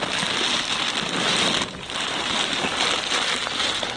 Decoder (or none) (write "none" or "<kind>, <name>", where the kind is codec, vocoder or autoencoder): none